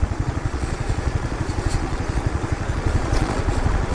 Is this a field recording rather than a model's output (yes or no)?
no